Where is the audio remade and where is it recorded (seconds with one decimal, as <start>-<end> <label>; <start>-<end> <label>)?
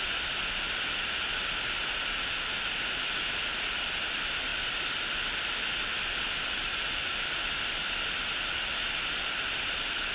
0.0-10.1 recorded